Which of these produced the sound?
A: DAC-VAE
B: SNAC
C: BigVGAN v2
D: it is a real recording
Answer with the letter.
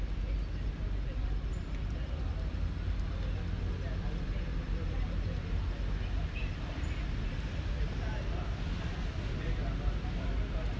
D